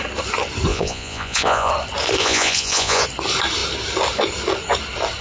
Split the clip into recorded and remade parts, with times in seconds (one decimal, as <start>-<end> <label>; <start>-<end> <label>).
0.0-0.7 recorded; 0.7-1.7 remade; 1.7-2.2 recorded; 2.2-3.0 remade; 3.0-5.2 recorded

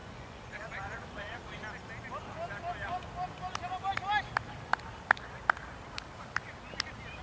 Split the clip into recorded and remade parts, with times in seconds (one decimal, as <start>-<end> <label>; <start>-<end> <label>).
0.0-1.4 remade; 1.4-7.2 recorded

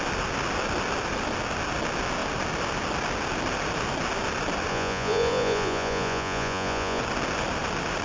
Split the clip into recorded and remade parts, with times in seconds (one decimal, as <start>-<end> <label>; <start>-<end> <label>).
0.0-4.7 recorded; 4.7-7.0 remade; 7.0-8.0 recorded